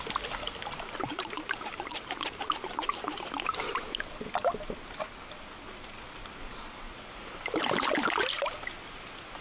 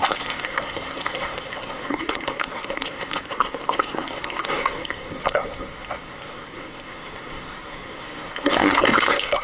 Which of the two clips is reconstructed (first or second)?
second